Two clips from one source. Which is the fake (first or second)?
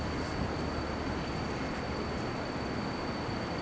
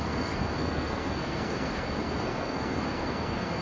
second